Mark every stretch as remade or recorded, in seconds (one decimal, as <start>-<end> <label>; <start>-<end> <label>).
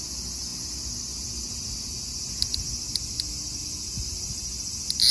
0.0-5.1 recorded